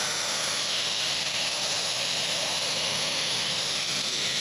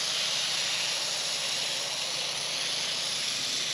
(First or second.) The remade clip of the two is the first